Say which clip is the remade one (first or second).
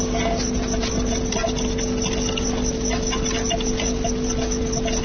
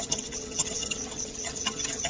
second